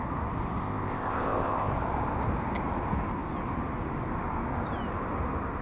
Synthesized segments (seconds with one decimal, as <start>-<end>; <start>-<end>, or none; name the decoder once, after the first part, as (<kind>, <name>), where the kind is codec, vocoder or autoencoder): 0.6-1.7 (codec, ZipCodec)